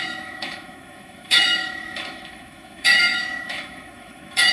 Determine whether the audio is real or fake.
fake